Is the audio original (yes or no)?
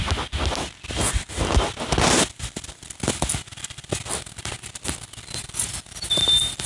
yes